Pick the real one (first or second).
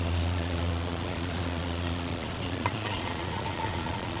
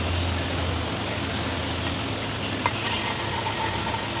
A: second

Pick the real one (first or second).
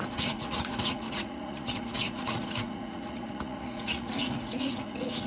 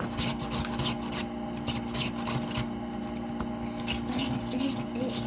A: second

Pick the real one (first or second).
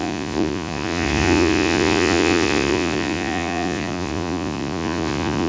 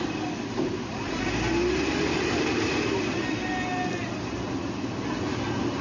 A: second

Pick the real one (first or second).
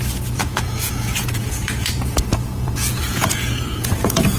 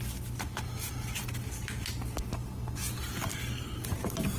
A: second